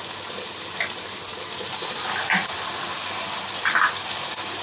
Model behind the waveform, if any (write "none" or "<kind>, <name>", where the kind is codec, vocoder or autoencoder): none